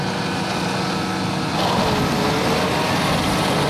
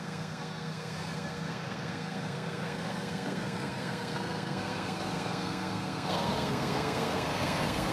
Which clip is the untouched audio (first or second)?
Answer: first